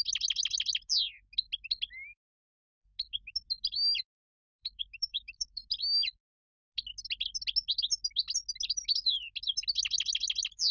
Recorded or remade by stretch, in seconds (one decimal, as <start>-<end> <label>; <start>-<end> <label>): 0.0-4.2 recorded; 4.2-5.6 remade; 5.6-10.7 recorded